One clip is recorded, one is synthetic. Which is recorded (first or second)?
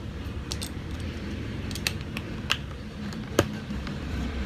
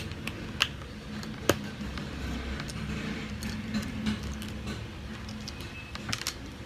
second